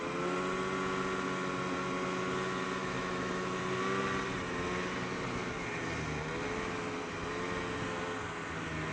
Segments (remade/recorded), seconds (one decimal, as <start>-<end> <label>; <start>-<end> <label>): 0.0-2.8 recorded; 2.8-3.6 remade; 3.6-8.9 recorded